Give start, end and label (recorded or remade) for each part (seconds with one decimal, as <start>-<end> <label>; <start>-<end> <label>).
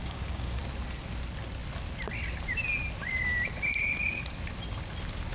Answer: 0.0-0.6 remade; 0.6-5.3 recorded